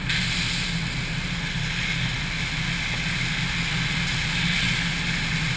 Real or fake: real